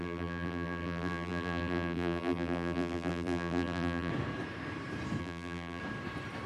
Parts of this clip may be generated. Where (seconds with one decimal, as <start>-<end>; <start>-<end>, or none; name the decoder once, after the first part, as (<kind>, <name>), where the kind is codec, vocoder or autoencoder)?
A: 0.0-4.1 (vocoder, BigVGAN v2); 5.2-5.8